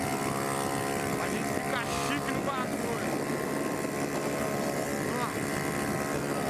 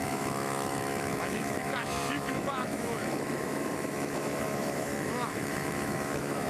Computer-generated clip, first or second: second